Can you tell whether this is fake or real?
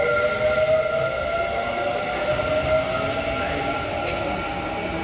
real